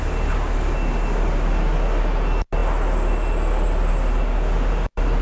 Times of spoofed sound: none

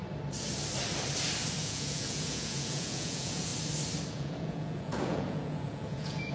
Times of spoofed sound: 1.6-3.5 (vocoder, Vocos); 4.1-6.3

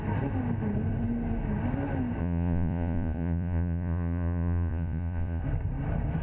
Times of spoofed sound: 2.2-5.4 (vocoder, Vocos)

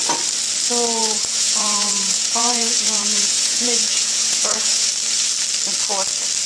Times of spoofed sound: 1.0-4.9 (vocoder, Vocos)

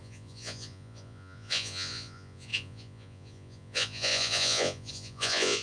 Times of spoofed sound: 0.0-5.6 (vocoder, Vocos)

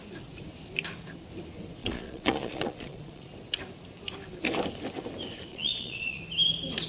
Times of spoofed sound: 1.8-3.3 (vocoder, Vocos); 5.5-6.2

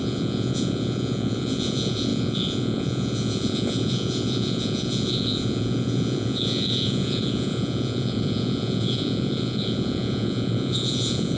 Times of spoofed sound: 0.0-11.4 (vocoder, Vocos)

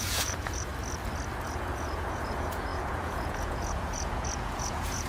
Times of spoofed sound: 0.0-0.7 (vocoder, Vocos); 1.4-5.1